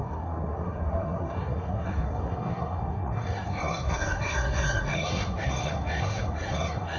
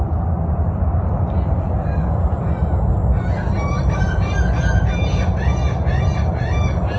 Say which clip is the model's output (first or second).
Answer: first